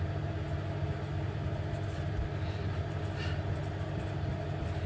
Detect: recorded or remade recorded